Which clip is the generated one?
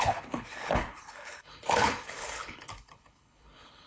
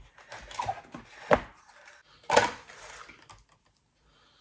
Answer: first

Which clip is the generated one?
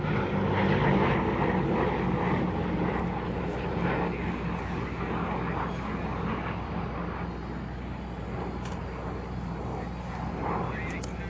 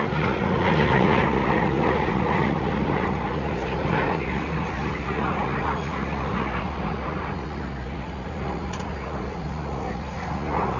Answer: second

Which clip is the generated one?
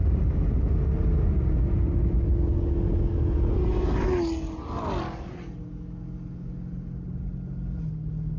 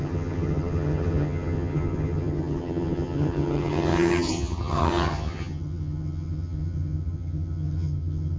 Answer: second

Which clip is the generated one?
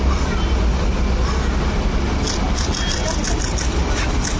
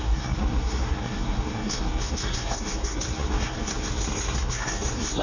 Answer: second